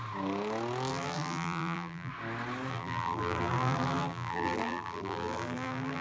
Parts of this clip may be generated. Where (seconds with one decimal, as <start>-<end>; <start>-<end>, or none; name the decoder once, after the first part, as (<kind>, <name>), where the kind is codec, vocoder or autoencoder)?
0.9-2.1 (vocoder, BigVGAN v2); 2.7-6.0